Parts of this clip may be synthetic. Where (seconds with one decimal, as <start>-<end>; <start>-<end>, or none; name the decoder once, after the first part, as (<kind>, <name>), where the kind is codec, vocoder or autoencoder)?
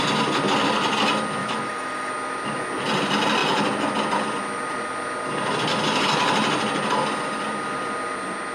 1.4-2.1 (autoencoder, DAC-VAE)